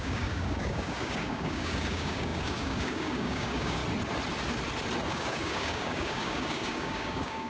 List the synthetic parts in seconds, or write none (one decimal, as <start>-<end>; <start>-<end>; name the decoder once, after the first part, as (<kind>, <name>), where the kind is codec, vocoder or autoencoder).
0.0-3.8 (codec, DAC); 5.1-7.5

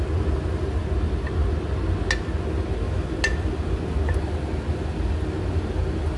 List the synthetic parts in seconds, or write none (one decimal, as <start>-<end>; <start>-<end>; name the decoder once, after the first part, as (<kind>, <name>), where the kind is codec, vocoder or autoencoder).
none

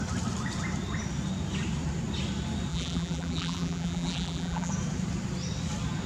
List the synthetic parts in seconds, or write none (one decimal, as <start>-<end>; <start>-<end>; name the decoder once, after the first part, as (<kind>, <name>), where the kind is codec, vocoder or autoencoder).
2.7-4.7 (vocoder, BigVGAN v2)